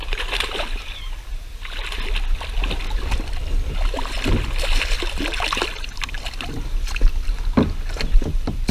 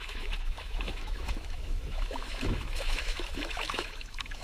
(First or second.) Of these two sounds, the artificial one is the second